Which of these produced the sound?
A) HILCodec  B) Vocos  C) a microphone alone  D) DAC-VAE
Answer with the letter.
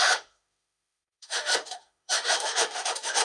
D